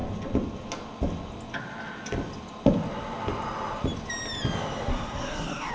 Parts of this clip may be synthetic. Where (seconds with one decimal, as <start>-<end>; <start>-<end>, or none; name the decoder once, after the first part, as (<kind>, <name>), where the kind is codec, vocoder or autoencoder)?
4.9-5.7 (codec, SNAC)